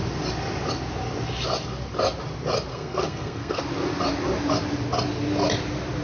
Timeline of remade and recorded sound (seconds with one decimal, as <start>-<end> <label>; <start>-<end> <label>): 0.0-2.7 recorded; 2.7-3.6 remade; 3.6-6.0 recorded